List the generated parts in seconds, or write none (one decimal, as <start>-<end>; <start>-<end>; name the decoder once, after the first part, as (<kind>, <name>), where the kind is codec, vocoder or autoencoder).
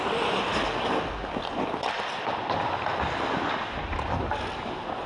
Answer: none